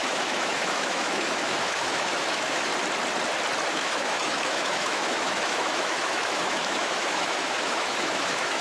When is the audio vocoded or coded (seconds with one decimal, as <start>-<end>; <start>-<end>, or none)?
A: 0.0-2.7; 3.7-8.6